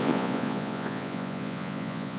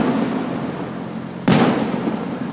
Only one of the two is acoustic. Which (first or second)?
second